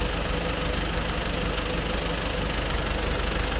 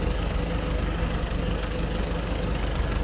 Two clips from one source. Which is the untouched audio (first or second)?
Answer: first